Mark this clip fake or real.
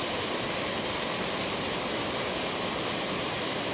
real